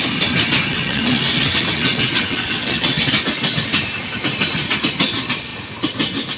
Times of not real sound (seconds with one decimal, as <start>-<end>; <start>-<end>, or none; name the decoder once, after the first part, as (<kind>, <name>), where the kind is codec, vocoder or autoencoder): 0.7-3.1 (vocoder, WaveNeXt)